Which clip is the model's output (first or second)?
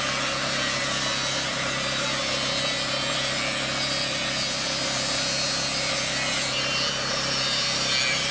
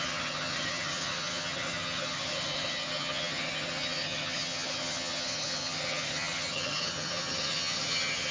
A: second